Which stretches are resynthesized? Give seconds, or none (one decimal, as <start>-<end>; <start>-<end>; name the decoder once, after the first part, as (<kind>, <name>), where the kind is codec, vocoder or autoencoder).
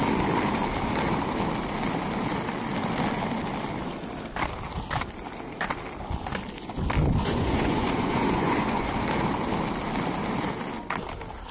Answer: 7.2-8.9 (vocoder, Vocos)